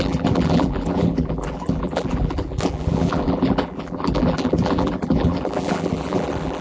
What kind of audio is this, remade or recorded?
remade